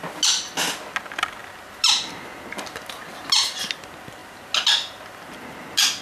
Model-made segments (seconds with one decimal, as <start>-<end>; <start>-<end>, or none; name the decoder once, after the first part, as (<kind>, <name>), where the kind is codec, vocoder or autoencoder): none